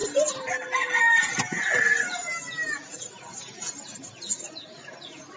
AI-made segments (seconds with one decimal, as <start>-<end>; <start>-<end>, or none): none